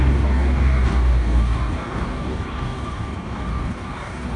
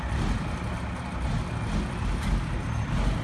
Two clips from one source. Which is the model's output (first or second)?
first